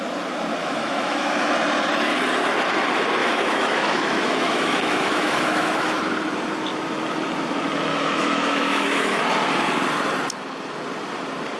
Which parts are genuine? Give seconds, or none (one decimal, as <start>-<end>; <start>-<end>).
0.0-0.6; 1.5-3.2; 6.0-7.9; 9.2-11.6